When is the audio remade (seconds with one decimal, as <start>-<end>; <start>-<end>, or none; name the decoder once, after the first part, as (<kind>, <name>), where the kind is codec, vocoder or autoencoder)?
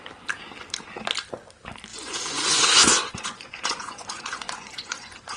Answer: 1.9-5.4 (vocoder, Vocos)